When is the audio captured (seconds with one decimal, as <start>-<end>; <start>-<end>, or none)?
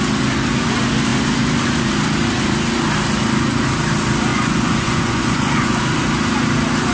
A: 0.0-4.3; 5.8-6.9